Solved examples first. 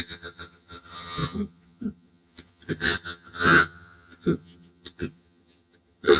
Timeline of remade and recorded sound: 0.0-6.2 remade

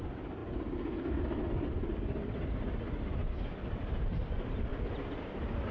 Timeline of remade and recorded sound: 0.0-0.4 remade; 0.4-3.8 recorded; 3.8-4.7 remade; 4.7-5.2 recorded; 5.2-5.7 remade

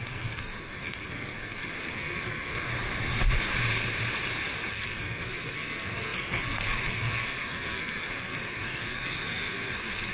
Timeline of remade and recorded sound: 0.0-2.7 remade; 2.7-4.7 recorded; 4.7-10.1 remade

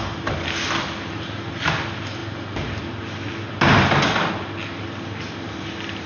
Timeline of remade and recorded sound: 0.0-6.1 recorded

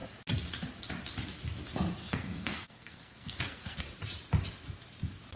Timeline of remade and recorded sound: 0.0-2.0 recorded; 2.0-3.8 remade; 3.8-5.4 recorded

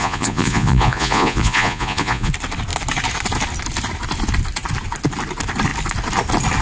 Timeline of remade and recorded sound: 0.0-2.3 remade; 2.3-6.6 recorded

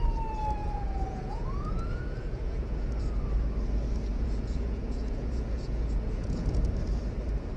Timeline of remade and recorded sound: 0.0-0.6 recorded; 0.6-3.0 remade; 3.0-4.1 recorded; 4.1-6.6 remade; 6.6-7.6 recorded

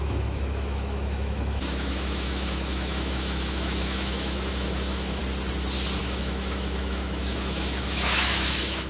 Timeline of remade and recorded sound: 0.0-5.2 remade; 5.2-6.0 recorded; 6.0-8.9 remade